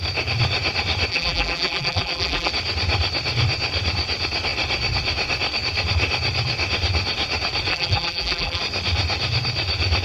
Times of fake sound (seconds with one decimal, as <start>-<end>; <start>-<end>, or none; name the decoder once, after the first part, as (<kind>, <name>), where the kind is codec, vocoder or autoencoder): 1.1-2.5 (vocoder, BigVGAN v2); 7.7-8.6